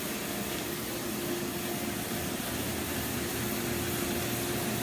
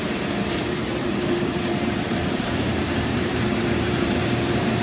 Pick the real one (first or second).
first